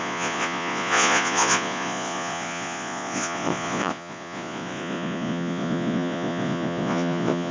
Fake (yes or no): yes